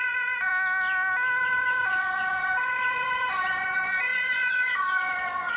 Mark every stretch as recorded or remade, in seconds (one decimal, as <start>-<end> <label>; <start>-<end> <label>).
0.0-0.5 remade; 0.5-1.4 recorded; 1.4-5.6 remade